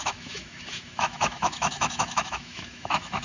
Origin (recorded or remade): remade